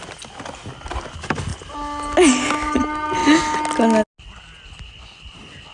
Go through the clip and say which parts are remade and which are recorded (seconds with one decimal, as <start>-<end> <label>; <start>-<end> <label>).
0.0-5.7 recorded